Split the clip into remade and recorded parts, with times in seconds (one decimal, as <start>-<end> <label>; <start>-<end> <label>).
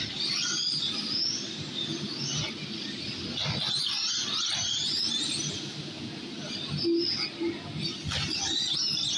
0.0-9.2 recorded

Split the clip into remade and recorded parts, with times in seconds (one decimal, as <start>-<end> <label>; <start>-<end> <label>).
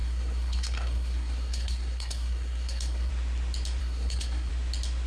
0.0-3.1 remade; 3.1-3.8 recorded; 3.8-4.5 remade; 4.5-5.1 recorded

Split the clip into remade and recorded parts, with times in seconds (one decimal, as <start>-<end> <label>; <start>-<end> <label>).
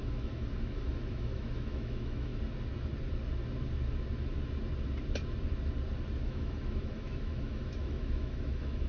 0.0-2.3 remade; 2.3-6.2 recorded; 6.2-8.9 remade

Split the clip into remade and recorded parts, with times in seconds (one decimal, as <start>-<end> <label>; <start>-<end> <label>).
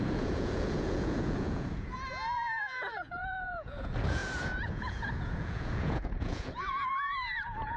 0.0-7.8 remade